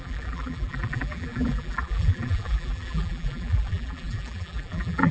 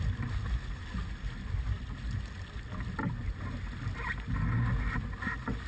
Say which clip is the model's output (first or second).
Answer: first